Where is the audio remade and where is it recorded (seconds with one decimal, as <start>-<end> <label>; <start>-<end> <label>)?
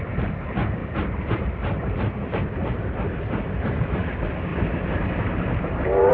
0.0-0.8 recorded; 0.8-4.1 remade; 4.1-4.5 recorded; 4.5-6.1 remade